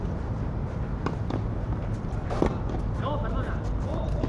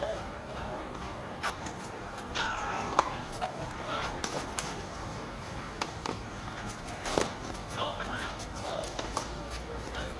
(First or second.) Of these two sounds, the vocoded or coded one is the second